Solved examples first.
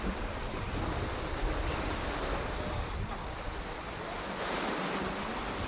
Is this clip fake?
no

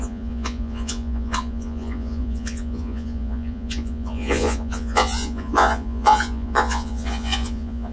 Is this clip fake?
yes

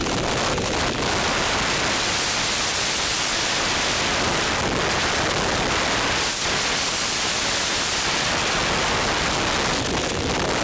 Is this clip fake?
no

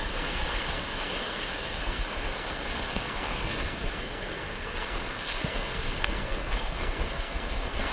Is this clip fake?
yes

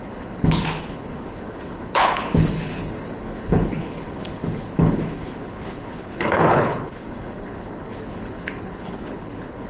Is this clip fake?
yes